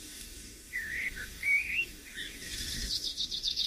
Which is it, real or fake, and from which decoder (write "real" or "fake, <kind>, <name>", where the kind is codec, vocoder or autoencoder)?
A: fake, codec, DAC